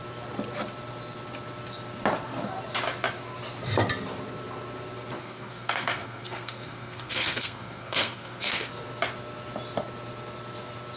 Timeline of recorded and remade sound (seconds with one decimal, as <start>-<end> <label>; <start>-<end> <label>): 0.0-5.2 recorded; 5.2-8.7 remade; 8.7-11.0 recorded